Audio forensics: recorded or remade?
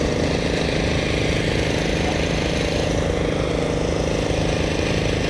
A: recorded